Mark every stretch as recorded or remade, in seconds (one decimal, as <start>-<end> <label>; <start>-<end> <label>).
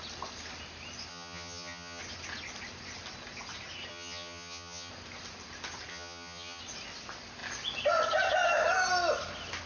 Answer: 0.0-1.1 recorded; 1.1-2.0 remade; 2.0-3.9 recorded; 3.9-4.9 remade; 4.9-5.9 recorded; 5.9-6.6 remade; 6.6-9.7 recorded